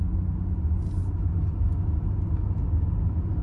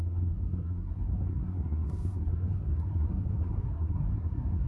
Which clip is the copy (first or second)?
second